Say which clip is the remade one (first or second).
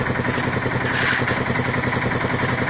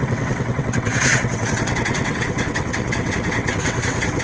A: second